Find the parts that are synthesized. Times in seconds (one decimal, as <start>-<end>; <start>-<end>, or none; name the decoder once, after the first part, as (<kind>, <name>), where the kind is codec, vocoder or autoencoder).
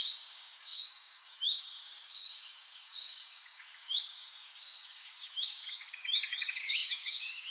0.0-7.5 (codec, DAC)